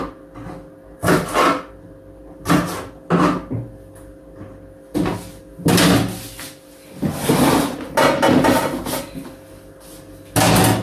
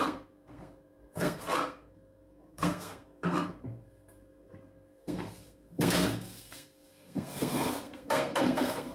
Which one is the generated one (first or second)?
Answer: second